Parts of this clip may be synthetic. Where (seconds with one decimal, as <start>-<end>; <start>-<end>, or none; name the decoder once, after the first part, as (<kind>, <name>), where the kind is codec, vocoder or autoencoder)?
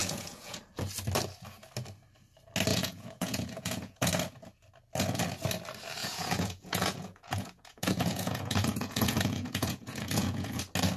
0.0-0.6 (vocoder, Vocos); 2.7-4.1; 6.0-10.6